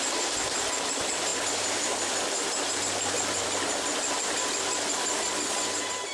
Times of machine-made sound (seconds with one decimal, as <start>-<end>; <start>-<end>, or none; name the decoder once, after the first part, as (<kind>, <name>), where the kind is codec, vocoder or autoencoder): none